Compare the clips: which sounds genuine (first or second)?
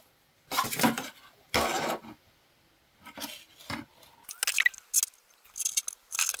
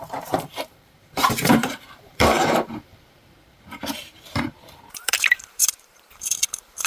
first